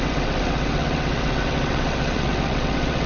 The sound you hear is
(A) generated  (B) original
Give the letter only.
A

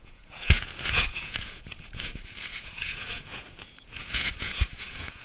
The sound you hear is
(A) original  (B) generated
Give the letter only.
B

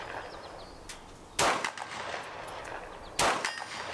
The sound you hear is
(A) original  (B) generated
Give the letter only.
A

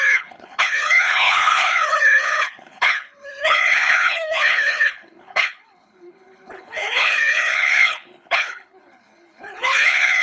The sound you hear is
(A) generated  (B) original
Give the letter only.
A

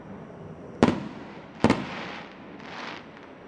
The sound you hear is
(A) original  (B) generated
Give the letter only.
B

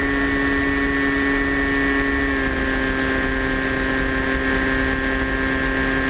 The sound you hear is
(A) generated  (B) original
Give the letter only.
B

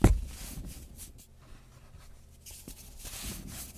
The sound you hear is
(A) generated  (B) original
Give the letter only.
B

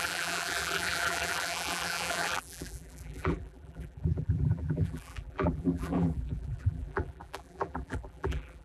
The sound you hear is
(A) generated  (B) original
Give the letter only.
A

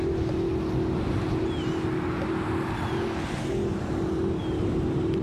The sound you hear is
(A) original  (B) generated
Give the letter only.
A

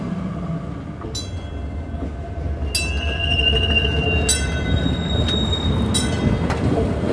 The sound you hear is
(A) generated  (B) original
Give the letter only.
B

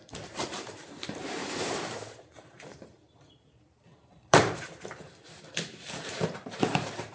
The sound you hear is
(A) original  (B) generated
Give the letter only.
B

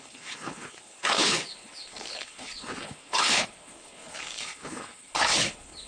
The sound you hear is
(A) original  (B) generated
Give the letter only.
B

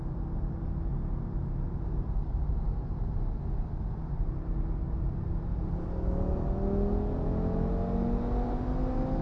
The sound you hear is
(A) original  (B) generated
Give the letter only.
A